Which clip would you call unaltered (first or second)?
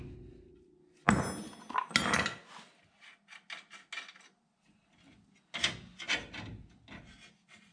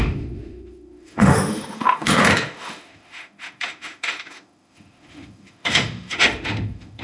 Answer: first